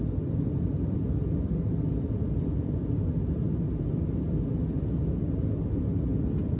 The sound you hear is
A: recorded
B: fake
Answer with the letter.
A